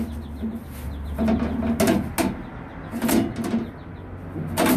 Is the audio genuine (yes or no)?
yes